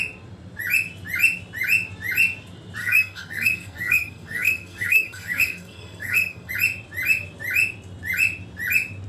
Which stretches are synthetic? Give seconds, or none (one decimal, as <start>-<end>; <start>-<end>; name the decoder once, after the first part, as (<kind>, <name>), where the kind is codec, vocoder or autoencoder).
2.8-6.5 (codec, SNAC)